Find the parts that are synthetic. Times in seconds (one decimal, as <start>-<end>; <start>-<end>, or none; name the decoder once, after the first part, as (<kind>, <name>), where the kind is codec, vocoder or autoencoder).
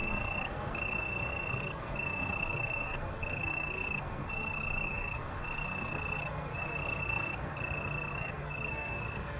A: 0.0-9.4 (codec, SNAC)